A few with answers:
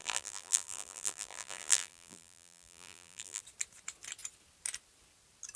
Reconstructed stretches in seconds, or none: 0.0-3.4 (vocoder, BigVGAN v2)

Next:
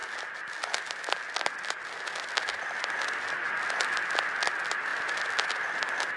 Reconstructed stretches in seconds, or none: none

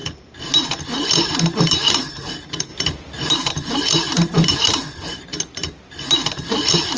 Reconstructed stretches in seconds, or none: 1.9-2.7 (vocoder, BigVGAN v2); 3.3-5.3; 6.5-7.0